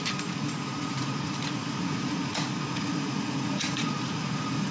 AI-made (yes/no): yes